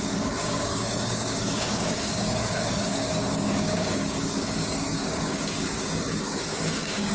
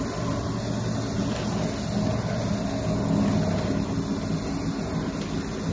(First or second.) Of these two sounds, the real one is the second